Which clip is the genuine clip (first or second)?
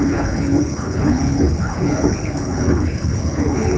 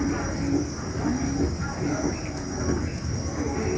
second